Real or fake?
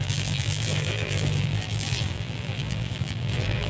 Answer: fake